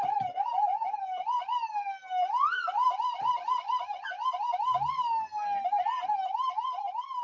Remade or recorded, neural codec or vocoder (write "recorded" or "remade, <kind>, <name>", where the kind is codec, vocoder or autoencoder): recorded